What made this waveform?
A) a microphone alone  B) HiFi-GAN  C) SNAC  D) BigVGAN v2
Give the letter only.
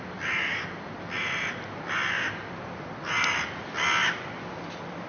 A